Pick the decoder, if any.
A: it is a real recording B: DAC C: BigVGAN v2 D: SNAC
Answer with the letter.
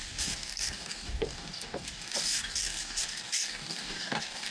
B